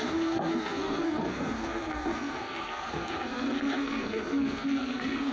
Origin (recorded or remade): remade